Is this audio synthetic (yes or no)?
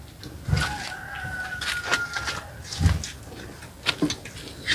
no